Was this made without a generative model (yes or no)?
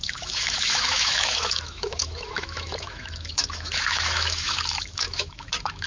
no